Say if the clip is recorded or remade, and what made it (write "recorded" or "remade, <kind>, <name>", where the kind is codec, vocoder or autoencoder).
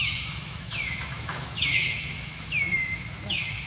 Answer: remade, autoencoder, DAC-VAE